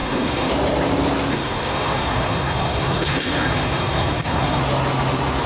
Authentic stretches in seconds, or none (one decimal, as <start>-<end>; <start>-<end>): 0.5-1.3; 4.6-5.5